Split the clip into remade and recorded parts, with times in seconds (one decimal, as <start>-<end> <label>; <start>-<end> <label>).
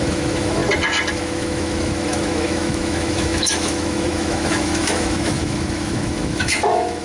0.0-0.6 remade; 0.6-1.1 recorded; 1.1-7.0 remade